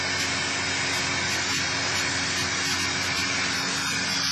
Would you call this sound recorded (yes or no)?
yes